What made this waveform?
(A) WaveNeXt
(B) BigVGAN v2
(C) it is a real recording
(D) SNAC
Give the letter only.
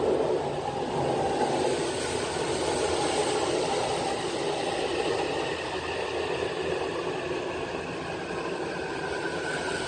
C